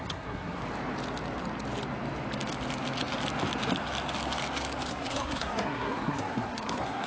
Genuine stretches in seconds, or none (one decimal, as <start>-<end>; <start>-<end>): 0.6-4.9